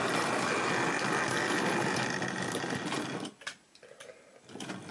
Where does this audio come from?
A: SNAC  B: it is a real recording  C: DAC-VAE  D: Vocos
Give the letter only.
B